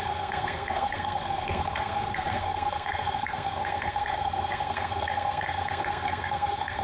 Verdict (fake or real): fake